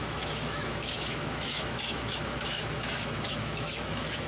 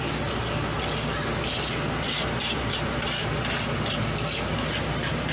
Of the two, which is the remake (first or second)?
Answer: first